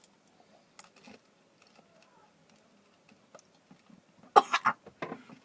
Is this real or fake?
real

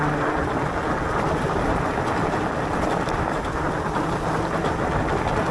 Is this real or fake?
real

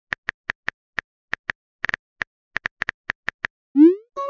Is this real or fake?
real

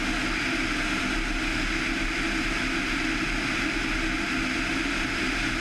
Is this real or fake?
real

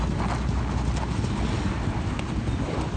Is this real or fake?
real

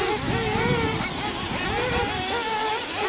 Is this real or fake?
real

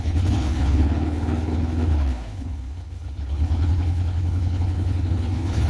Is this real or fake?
fake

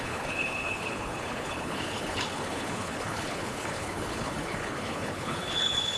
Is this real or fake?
fake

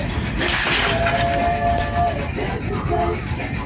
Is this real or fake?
real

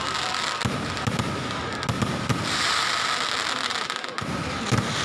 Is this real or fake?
real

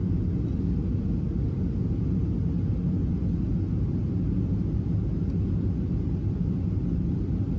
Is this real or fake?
real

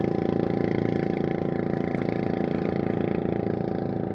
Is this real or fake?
real